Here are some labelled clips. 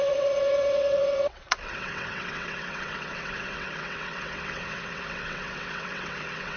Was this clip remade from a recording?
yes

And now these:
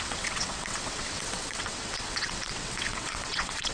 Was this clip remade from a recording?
yes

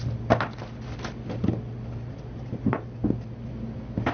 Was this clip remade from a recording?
no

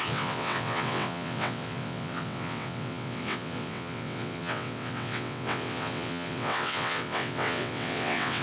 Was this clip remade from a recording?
yes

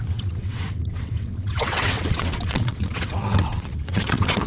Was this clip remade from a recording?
yes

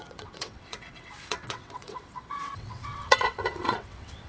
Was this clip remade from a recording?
yes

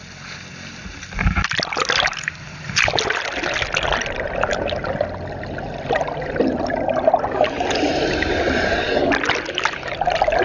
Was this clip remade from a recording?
no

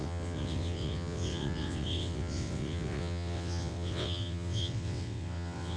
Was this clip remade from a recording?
yes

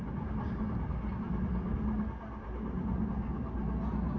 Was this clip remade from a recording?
no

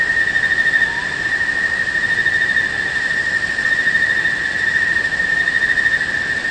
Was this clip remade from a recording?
no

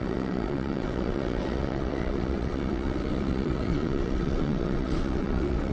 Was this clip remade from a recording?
yes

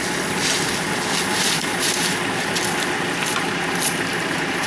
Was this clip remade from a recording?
no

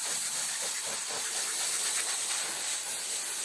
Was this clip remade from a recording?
no